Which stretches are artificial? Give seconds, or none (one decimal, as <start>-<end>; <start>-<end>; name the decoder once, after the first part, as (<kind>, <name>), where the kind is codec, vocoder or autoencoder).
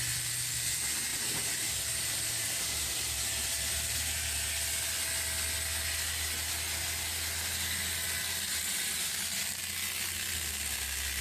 1.1-4.5 (vocoder, BigVGAN v2); 8.5-9.6